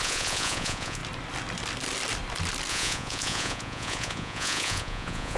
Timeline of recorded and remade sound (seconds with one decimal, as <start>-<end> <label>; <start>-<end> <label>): 0.0-1.0 remade; 1.0-2.7 recorded; 2.7-5.4 remade